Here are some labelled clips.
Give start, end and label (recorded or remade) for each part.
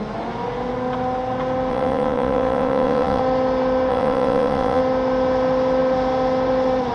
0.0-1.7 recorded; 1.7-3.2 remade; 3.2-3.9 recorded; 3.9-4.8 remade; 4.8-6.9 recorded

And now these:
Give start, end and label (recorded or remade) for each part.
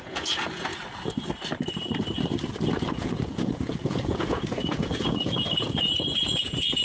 0.0-0.7 remade; 0.7-2.9 recorded; 2.9-6.8 remade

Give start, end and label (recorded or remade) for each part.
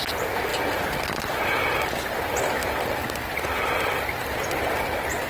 0.0-5.3 recorded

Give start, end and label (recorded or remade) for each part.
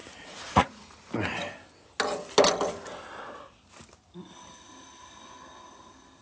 0.0-1.0 remade; 1.0-6.2 recorded